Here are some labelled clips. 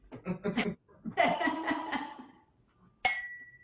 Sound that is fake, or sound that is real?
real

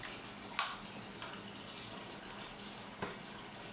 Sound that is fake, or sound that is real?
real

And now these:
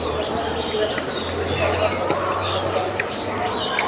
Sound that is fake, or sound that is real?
real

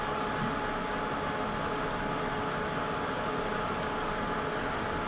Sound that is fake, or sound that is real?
real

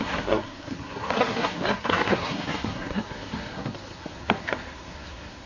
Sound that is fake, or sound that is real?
fake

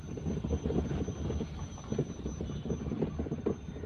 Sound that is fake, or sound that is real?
real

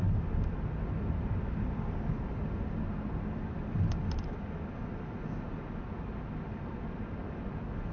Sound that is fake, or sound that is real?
real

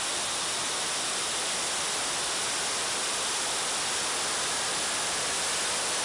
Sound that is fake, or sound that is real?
real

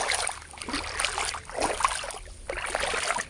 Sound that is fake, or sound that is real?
real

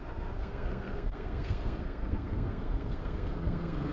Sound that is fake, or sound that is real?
fake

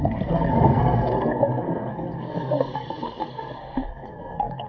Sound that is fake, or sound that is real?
fake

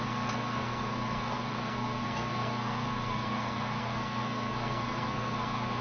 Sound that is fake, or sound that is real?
fake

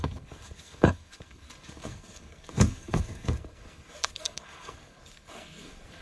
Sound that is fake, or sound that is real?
fake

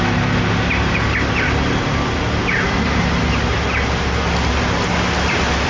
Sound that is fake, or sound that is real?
real